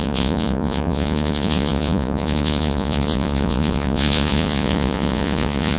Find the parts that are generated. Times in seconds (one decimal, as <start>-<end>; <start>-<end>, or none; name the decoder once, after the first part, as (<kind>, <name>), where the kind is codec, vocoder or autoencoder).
0.0-5.8 (vocoder, Vocos)